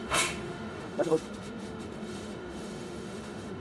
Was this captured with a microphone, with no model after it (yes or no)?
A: no